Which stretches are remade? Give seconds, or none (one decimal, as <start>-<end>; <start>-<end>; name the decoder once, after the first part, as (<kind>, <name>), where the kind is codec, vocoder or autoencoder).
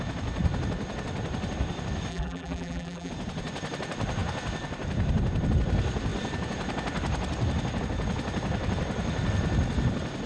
2.1-3.1 (vocoder, BigVGAN v2)